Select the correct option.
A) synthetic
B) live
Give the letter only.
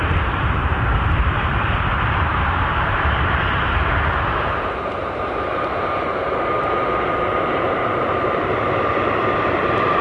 A